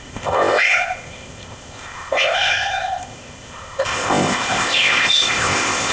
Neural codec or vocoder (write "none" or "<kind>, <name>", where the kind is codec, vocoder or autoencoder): codec, ZipCodec